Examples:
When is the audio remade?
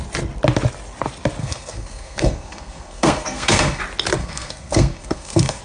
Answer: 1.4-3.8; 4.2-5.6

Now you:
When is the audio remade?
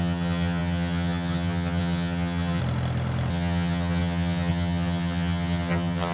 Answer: 0.0-2.6; 3.3-6.1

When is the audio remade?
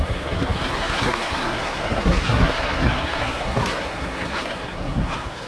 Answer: 0.0-5.5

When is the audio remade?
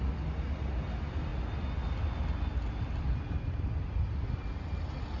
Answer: none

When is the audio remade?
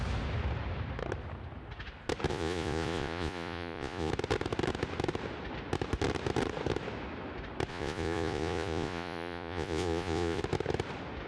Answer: 2.3-4.1; 7.7-10.4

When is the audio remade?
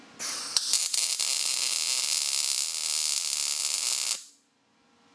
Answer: none